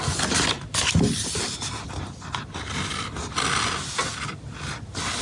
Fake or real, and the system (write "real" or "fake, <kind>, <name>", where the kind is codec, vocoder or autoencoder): real